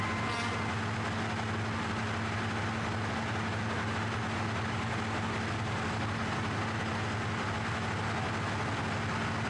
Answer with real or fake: real